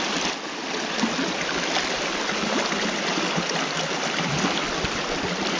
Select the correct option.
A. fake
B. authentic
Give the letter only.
B